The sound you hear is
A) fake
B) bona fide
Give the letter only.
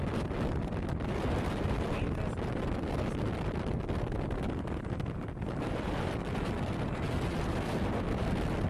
B